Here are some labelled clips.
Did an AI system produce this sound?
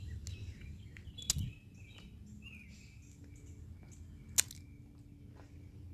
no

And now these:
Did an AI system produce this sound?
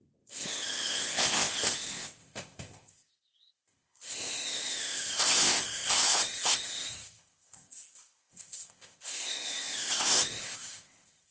yes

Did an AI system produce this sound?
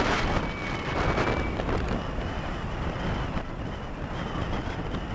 no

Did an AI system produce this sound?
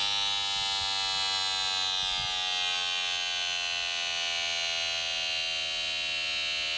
no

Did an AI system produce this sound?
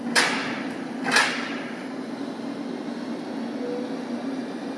no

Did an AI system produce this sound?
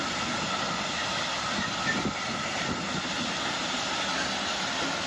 no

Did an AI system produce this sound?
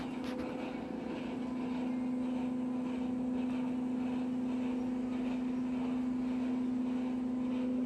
no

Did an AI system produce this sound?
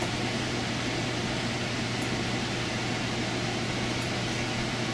no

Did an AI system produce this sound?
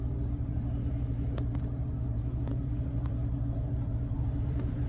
yes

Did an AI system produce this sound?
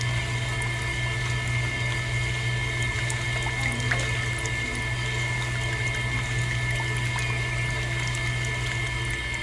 no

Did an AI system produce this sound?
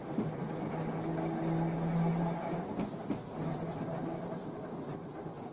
no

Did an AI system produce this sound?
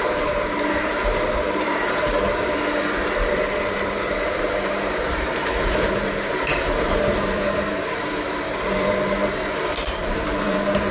yes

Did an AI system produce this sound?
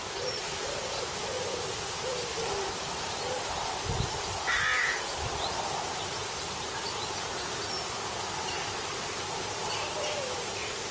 no